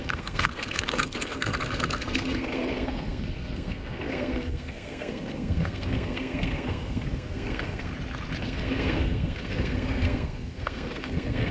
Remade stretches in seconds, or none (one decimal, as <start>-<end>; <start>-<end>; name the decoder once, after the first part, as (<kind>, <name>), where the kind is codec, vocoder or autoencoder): 0.0-7.9 (codec, SNAC); 8.4-11.5